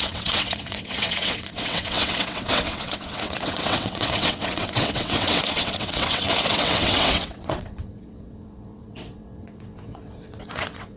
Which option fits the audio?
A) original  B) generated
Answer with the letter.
B